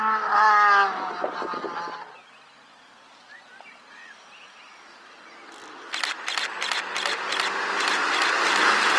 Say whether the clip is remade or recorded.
recorded